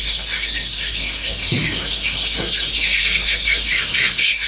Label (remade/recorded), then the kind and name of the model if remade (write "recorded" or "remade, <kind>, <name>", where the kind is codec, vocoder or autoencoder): remade, codec, SNAC